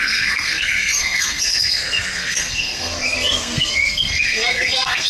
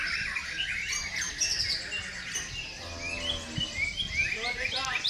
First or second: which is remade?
first